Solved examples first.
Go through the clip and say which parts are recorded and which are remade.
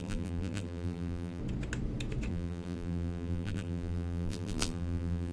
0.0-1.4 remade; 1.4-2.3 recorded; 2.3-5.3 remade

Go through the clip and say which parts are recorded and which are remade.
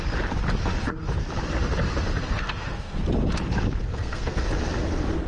0.0-2.2 recorded; 2.2-3.0 remade; 3.0-3.8 recorded; 3.8-4.4 remade; 4.4-5.3 recorded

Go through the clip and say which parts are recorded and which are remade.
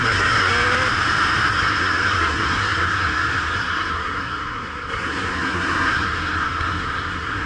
0.0-0.5 remade; 0.5-1.5 recorded; 1.5-7.5 remade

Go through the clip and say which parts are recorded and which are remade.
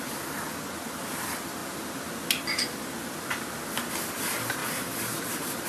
0.0-4.6 recorded; 4.6-5.7 remade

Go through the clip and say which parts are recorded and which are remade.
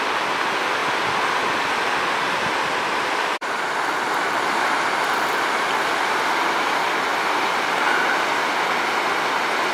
0.0-0.8 recorded; 0.8-5.6 remade; 5.6-7.1 recorded; 7.1-7.7 remade; 7.7-9.7 recorded